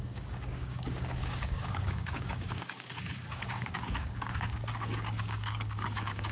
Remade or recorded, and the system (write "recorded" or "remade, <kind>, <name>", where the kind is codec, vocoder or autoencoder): remade, codec, DAC